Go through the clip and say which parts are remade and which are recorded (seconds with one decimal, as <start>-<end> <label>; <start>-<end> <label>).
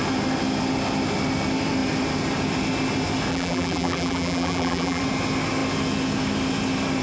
0.0-3.3 recorded; 3.3-5.0 remade; 5.0-7.0 recorded